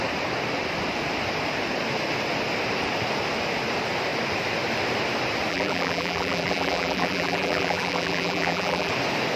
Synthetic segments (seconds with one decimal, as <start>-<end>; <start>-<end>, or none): 5.5-8.9